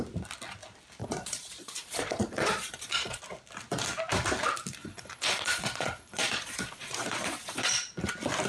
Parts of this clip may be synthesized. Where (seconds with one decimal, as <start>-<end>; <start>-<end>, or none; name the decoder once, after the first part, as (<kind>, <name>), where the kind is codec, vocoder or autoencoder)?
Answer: 1.0-3.2 (vocoder, Vocos); 4.8-7.7